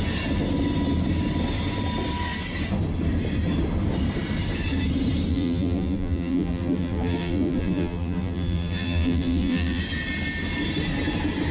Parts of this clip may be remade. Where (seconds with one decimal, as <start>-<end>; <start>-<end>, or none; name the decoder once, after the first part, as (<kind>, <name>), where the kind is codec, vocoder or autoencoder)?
5.3-9.8 (vocoder, BigVGAN v2)